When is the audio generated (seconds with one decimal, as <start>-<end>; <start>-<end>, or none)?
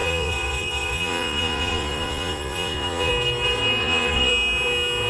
0.0-3.1; 3.8-4.3